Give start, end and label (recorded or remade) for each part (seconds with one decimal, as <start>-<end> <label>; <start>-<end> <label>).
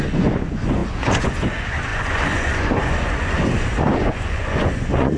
0.0-5.2 remade